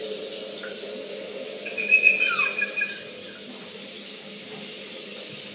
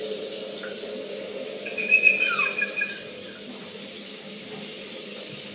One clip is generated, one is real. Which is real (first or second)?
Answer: first